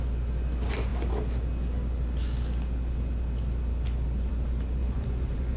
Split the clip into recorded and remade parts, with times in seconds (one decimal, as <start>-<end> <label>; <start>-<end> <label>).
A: 0.0-4.8 recorded; 4.8-5.6 remade